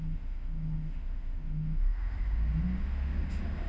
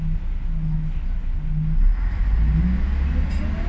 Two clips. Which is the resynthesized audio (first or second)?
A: first